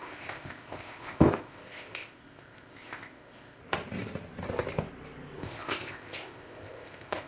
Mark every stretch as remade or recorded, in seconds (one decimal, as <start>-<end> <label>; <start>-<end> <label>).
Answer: 0.0-3.6 remade; 3.6-5.4 recorded; 5.4-7.3 remade